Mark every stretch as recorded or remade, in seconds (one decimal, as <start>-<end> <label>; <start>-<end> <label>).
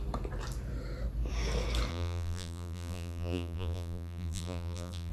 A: 0.0-1.9 recorded; 1.9-5.1 remade